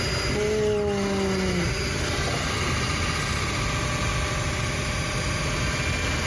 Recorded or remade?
recorded